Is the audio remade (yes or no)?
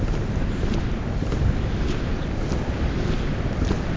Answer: no